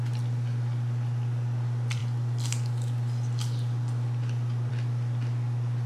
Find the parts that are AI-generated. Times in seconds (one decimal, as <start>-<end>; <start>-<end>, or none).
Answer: none